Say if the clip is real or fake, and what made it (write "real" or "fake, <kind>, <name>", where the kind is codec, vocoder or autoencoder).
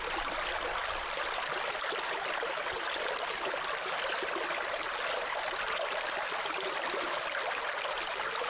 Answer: real